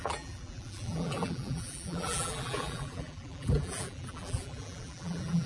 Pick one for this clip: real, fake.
fake